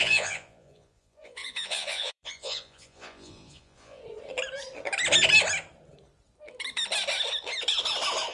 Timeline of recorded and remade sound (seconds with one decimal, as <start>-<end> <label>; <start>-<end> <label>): 0.0-4.0 remade; 4.0-8.3 recorded